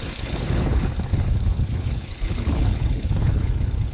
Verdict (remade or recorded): remade